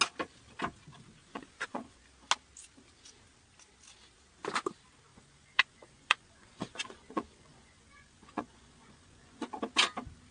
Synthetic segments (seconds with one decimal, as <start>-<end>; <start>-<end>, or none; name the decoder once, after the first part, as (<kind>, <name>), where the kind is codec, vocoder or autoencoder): 1.2-2.0 (vocoder, Vocos); 5.1-9.5